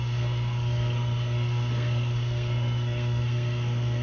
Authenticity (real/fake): fake